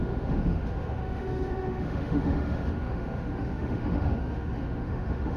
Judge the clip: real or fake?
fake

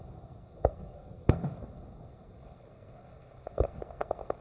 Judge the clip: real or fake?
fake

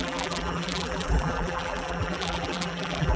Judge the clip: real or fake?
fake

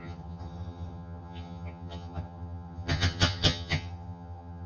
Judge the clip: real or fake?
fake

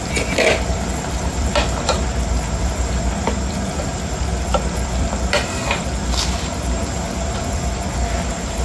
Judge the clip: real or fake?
fake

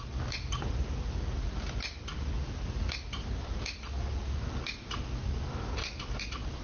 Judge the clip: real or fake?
real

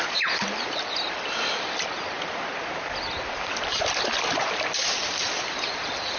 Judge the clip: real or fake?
fake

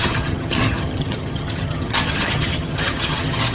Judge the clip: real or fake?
fake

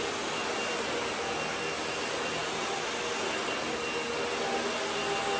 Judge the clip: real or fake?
real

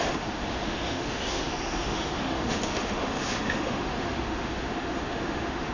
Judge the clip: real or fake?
fake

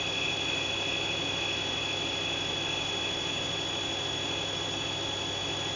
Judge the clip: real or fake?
real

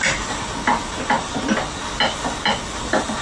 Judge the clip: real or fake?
real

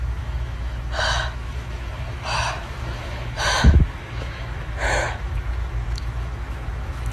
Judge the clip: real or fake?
fake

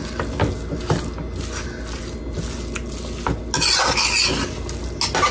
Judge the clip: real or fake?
real